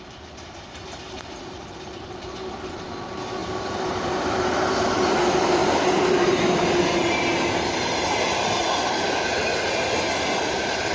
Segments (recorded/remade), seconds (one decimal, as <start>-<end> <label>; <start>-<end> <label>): 0.0-10.9 recorded